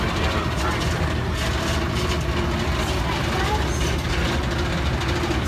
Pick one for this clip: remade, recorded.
recorded